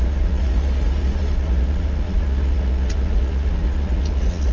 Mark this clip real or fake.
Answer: fake